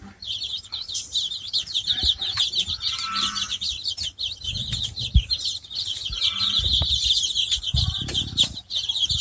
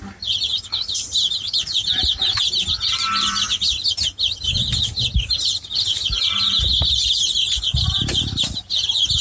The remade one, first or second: first